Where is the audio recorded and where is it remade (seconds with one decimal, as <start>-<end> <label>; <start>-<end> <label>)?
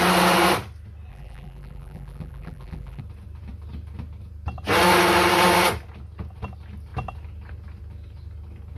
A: 0.0-1.1 recorded; 1.1-3.0 remade; 3.0-8.8 recorded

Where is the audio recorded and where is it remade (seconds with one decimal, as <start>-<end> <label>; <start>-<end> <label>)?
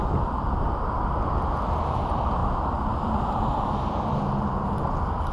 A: 0.0-2.4 recorded; 2.4-4.2 remade; 4.2-5.3 recorded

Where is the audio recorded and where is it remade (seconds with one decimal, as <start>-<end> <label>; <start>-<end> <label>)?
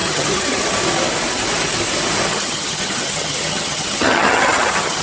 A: 0.0-0.6 remade; 0.6-2.3 recorded; 2.3-5.0 remade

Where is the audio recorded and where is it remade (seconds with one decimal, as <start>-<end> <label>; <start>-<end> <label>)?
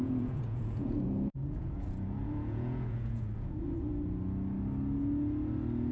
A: 0.0-3.9 remade; 3.9-5.9 recorded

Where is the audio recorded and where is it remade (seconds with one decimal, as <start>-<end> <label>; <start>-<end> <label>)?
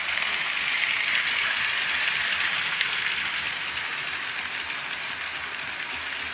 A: 0.0-2.7 recorded; 2.7-3.2 remade; 3.2-6.3 recorded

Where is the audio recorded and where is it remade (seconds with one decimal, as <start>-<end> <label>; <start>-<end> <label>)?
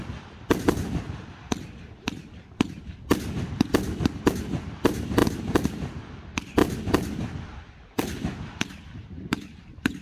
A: 0.0-6.6 recorded; 6.6-9.6 remade; 9.6-10.0 recorded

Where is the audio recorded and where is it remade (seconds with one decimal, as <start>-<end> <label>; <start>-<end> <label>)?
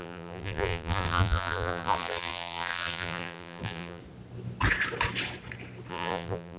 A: 0.0-4.0 remade; 4.0-5.9 recorded; 5.9-6.6 remade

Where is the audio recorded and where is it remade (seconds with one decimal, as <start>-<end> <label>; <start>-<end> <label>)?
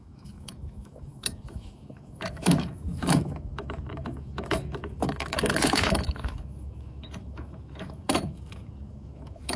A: 0.0-9.6 remade